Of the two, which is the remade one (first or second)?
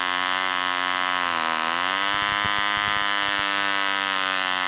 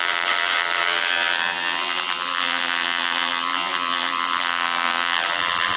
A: second